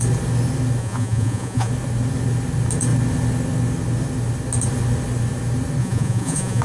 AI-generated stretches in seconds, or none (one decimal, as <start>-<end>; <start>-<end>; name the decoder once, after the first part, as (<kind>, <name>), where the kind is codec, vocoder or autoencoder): 0.8-1.7 (vocoder, Vocos); 5.8-6.6